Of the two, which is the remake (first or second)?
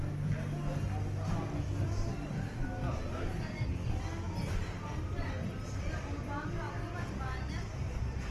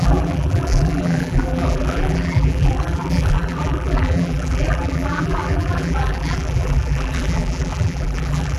second